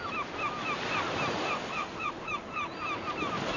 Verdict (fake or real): real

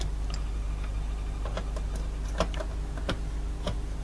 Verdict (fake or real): real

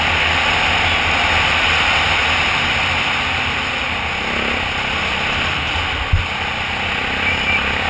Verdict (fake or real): real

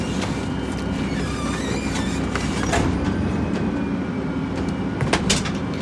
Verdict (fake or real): real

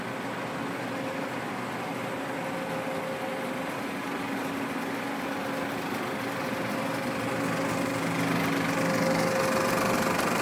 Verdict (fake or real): real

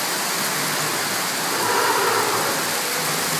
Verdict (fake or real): real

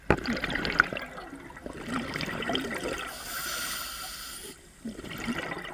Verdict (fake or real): real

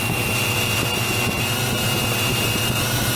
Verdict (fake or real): fake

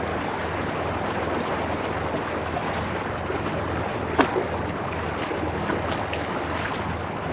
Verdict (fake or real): real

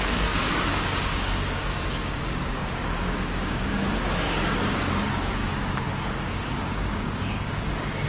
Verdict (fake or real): fake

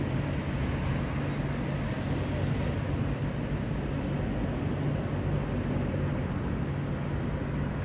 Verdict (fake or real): real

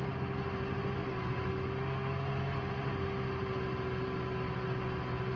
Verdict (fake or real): real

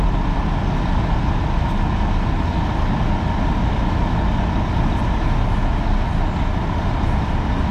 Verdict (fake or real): real